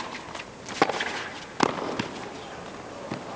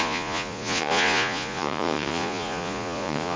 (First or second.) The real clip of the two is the first